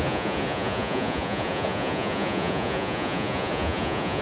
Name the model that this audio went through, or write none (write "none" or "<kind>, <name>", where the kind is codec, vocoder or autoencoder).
vocoder, Vocos